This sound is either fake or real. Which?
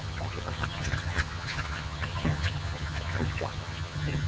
fake